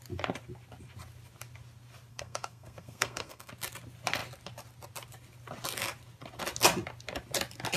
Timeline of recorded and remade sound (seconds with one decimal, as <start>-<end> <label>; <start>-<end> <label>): 0.0-2.1 recorded; 2.1-3.5 remade; 3.5-7.8 recorded